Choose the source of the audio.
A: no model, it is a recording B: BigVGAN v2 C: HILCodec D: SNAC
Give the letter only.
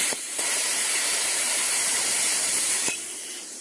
B